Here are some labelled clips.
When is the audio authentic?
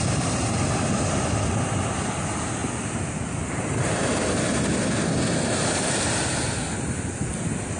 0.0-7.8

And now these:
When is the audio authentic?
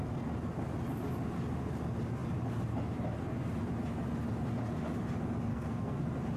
0.0-5.5; 6.0-6.4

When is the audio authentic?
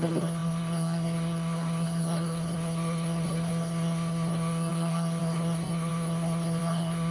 none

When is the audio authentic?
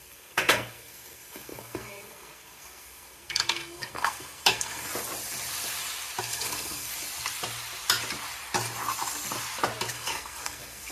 4.9-6.2; 6.9-9.9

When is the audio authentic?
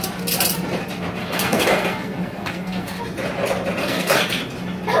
0.0-1.2; 3.0-3.8; 4.4-5.0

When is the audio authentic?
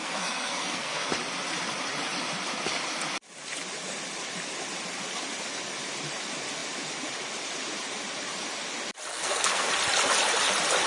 1.1-9.1; 9.7-10.9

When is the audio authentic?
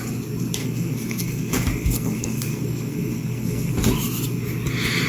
0.0-0.6; 3.7-5.1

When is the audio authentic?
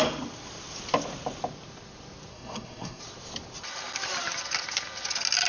0.0-2.3; 3.0-5.5